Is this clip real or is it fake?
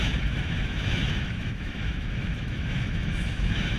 fake